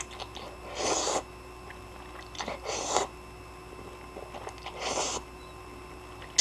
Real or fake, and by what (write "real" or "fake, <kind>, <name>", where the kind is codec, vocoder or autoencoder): real